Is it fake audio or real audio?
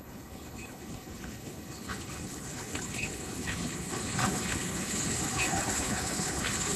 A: fake